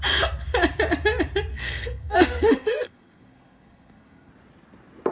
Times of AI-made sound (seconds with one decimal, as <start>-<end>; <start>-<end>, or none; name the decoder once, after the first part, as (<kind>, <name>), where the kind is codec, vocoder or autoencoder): 1.5-4.3 (codec, SNAC)